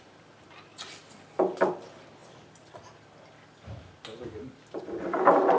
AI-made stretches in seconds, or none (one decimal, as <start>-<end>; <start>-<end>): 0.7-1.7; 2.2-4.8